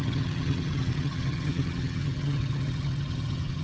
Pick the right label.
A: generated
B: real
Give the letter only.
A